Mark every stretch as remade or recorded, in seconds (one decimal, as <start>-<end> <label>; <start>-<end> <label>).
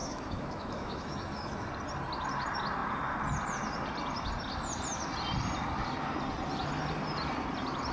0.0-1.7 remade; 1.7-7.9 recorded